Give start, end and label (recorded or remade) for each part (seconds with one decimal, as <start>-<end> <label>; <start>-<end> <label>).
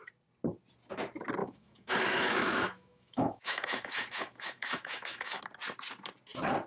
0.0-1.4 recorded; 1.4-5.4 remade; 5.4-6.7 recorded